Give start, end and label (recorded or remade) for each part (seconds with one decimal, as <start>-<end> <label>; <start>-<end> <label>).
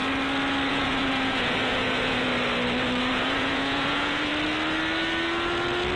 0.0-0.7 recorded; 0.7-2.3 remade; 2.3-3.1 recorded; 3.1-4.3 remade; 4.3-6.0 recorded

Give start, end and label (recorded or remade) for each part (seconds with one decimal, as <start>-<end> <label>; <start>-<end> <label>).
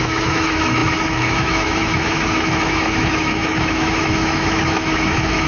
0.0-5.5 remade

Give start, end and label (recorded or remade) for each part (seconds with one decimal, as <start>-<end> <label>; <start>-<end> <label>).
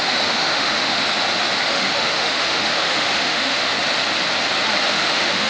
0.0-1.0 remade; 1.0-1.6 recorded; 1.6-3.7 remade; 3.7-4.9 recorded; 4.9-5.5 remade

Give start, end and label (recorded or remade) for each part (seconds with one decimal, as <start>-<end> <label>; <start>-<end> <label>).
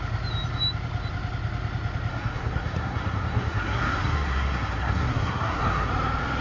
0.0-2.1 recorded; 2.1-5.9 remade; 5.9-6.4 recorded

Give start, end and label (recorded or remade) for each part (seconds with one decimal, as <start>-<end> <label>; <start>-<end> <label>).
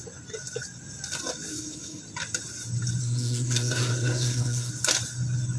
0.0-1.5 recorded; 1.5-2.0 remade; 2.0-3.0 recorded; 3.0-4.7 remade; 4.7-5.6 recorded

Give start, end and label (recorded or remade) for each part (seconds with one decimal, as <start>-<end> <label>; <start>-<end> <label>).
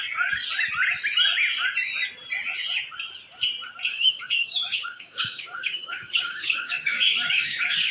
0.0-3.9 recorded; 3.9-7.9 remade